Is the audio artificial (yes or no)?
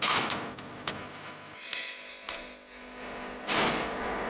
no